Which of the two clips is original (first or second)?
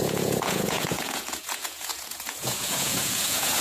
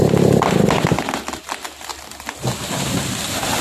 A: second